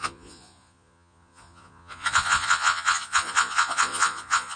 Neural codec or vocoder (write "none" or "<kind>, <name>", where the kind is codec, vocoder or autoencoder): vocoder, Vocos